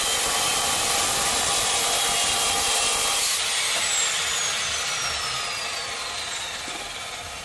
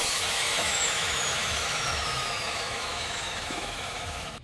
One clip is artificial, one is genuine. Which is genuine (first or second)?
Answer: first